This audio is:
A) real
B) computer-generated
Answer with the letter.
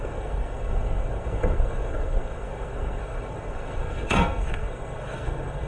B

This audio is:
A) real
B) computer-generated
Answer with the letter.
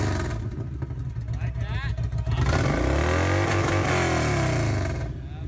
A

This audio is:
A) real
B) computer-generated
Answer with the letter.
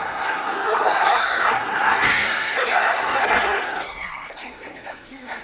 B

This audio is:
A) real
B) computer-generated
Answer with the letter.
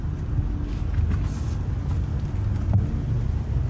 A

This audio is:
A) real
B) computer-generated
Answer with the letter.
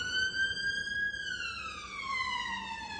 A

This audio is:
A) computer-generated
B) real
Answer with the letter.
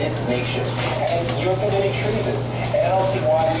B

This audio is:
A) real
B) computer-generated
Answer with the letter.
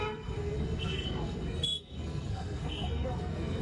B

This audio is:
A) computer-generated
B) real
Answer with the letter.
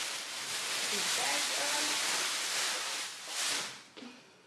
B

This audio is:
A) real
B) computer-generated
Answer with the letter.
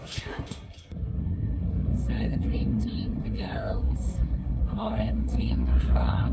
B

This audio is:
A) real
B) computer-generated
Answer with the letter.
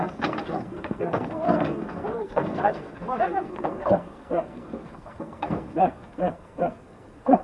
B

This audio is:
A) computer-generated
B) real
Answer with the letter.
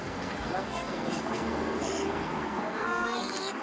A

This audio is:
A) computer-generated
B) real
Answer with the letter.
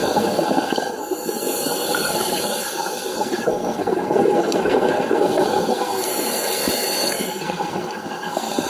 A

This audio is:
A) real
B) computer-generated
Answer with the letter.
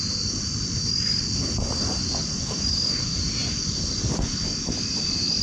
A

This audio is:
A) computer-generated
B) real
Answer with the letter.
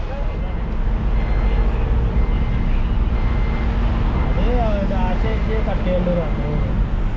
B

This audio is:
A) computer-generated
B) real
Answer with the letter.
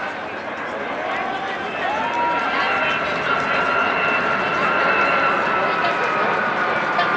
B